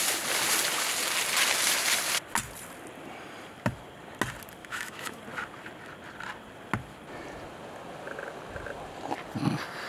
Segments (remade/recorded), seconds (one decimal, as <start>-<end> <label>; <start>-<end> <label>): 0.0-4.6 recorded; 4.6-5.2 remade; 5.2-9.9 recorded